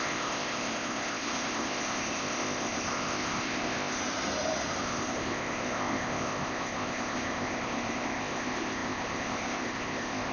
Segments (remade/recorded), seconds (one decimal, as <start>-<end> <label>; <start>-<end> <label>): 0.0-4.0 remade; 4.0-4.8 recorded; 4.8-10.3 remade